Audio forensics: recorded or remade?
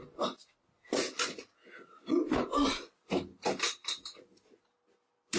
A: recorded